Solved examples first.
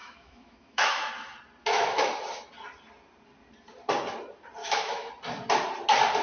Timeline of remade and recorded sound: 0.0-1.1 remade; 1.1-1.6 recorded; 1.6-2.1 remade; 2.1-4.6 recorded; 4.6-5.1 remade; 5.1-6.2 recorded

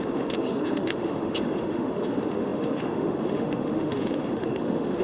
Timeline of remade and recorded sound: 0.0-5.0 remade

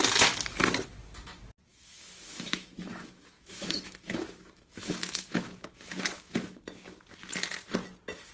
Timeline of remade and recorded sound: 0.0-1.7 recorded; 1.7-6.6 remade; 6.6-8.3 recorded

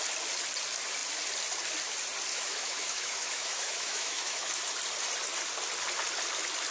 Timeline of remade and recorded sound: 0.0-2.3 recorded; 2.3-4.6 remade; 4.6-6.7 recorded

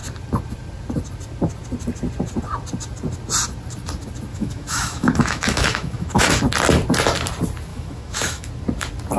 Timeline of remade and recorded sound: 0.0-4.3 recorded; 4.3-6.4 remade; 6.4-7.7 recorded; 7.7-8.5 remade; 8.5-9.2 recorded